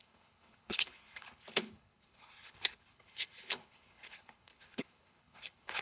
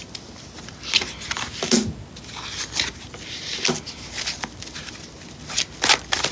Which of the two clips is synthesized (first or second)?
first